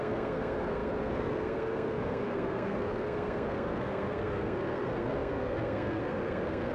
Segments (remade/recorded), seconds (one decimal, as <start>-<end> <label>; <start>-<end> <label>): 0.0-6.7 remade